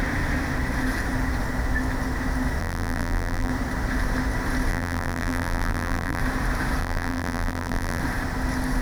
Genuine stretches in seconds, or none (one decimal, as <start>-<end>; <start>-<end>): 0.0-2.6; 3.5-4.7; 6.2-6.8; 8.0-8.8

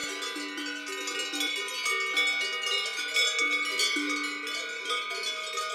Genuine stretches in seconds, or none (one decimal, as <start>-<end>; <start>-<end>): 0.0-5.7

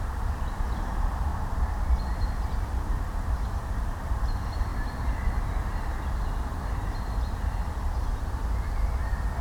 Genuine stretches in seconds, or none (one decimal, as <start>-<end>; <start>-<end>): 1.3-2.2; 4.7-5.4; 5.9-6.5; 8.4-9.4

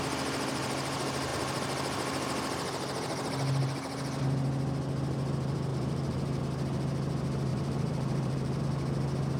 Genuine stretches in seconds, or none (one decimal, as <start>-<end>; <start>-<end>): 0.0-5.7; 6.4-7.5; 8.6-9.4